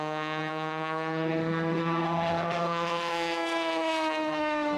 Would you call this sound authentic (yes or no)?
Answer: no